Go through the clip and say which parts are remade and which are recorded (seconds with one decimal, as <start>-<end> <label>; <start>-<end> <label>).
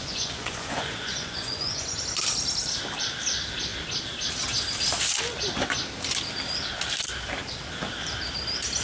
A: 0.0-2.0 remade; 2.0-8.8 recorded